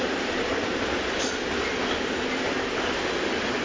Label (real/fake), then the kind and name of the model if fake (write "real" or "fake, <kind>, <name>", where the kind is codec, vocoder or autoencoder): real